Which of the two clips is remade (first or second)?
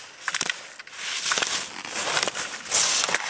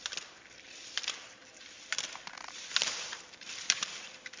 second